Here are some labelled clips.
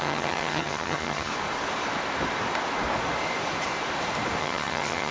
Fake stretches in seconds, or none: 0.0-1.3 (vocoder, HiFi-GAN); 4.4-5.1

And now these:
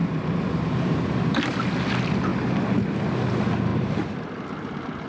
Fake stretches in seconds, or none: 0.0-1.4 (vocoder, BigVGAN v2); 3.7-4.3